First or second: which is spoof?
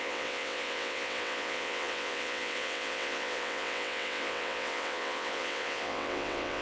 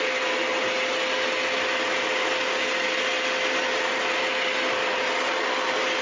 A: first